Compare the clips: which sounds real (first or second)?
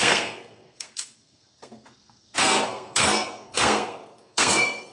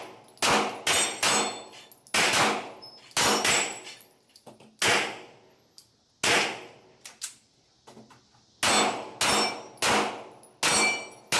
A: second